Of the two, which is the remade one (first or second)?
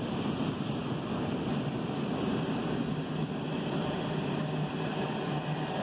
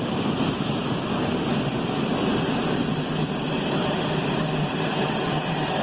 second